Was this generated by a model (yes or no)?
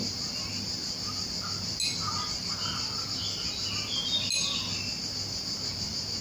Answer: no